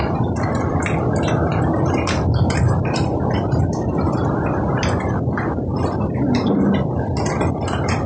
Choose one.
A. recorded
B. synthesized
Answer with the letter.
B